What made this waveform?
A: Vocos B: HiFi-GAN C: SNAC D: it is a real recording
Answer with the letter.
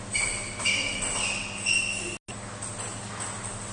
D